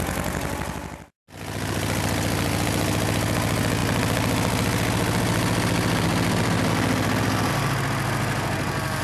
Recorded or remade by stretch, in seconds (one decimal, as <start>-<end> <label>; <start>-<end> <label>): 0.0-9.0 recorded